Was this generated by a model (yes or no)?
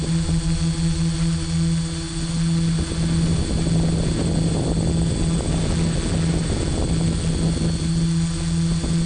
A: no